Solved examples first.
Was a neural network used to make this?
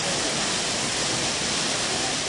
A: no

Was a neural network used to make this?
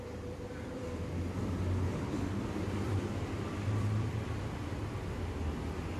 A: yes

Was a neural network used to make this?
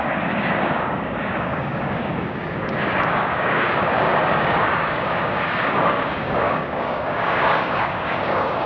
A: yes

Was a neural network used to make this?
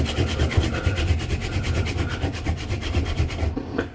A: no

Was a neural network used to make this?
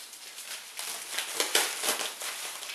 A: no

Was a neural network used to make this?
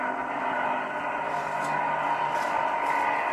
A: no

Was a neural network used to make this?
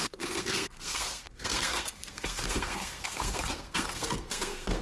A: yes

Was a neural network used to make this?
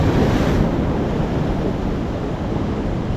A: no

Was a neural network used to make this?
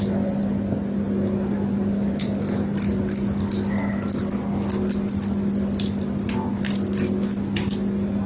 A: no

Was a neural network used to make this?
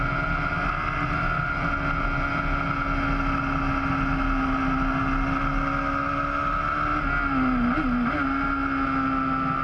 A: no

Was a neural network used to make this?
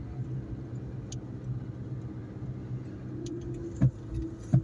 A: no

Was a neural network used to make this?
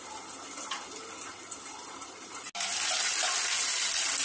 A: no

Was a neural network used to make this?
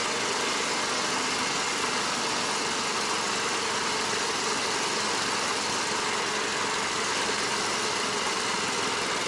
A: no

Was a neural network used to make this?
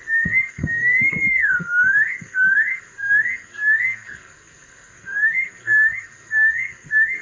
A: yes